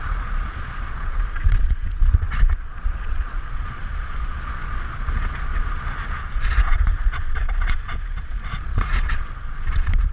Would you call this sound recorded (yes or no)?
no